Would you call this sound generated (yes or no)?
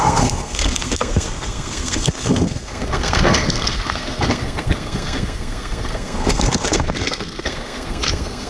yes